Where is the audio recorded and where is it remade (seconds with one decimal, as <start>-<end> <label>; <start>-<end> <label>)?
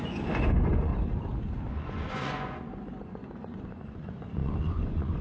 0.0-0.9 remade; 0.9-1.7 recorded; 1.7-5.2 remade